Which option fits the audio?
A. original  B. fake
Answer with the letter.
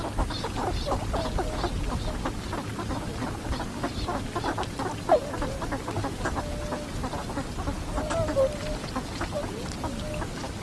A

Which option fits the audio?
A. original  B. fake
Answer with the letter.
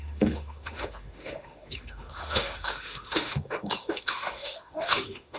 B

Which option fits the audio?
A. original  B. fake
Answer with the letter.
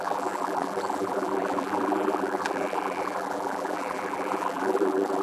B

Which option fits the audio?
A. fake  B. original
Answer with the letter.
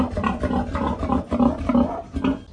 B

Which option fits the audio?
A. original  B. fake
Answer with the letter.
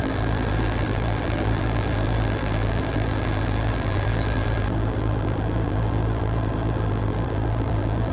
B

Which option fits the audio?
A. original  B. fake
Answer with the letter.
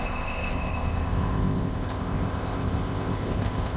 B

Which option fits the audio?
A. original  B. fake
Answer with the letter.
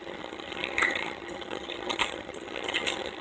B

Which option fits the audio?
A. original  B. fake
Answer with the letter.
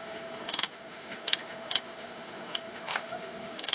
B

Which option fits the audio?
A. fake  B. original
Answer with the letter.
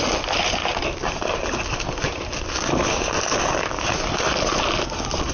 B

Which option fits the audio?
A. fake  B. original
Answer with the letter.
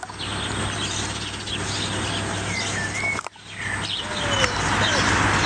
B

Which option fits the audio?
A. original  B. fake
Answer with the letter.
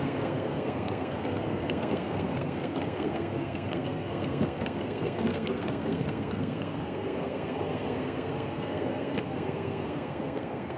B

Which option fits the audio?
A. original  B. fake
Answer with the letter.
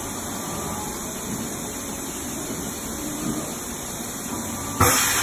B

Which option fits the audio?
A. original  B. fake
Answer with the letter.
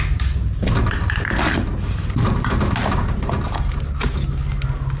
A